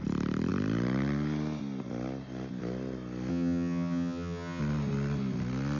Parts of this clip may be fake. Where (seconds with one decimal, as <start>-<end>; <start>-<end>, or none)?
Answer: 3.3-4.6